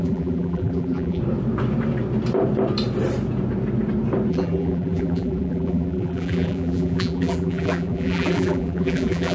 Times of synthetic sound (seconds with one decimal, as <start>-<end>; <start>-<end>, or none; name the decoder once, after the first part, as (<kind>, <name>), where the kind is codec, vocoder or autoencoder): 0.0-1.2 (vocoder, BigVGAN v2); 4.3-9.3